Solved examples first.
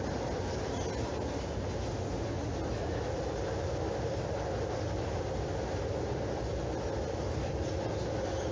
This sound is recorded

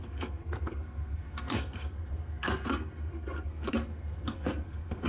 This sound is remade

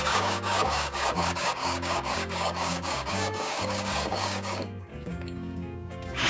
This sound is remade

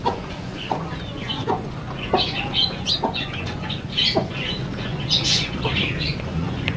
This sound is remade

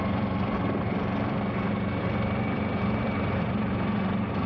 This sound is remade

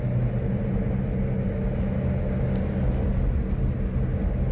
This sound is recorded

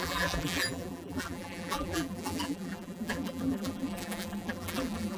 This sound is remade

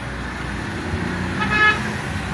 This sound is recorded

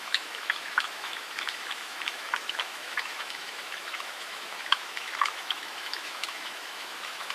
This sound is remade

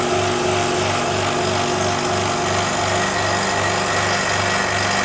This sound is recorded